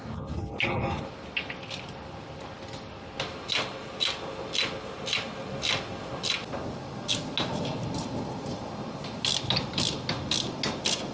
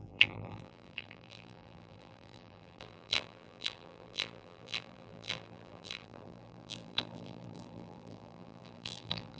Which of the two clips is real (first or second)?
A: first